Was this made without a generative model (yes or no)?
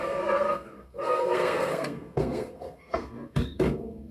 no